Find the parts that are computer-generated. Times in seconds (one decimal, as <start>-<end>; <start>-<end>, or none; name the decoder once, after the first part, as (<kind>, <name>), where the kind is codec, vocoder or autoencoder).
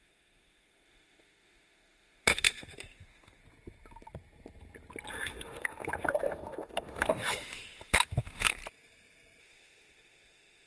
0.0-3.4 (autoencoder, DAC-VAE); 5.1-8.6; 9.4-10.7